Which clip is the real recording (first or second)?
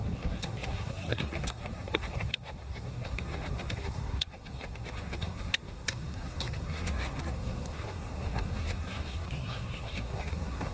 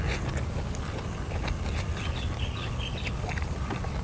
second